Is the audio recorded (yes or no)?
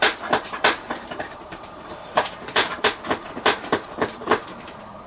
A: no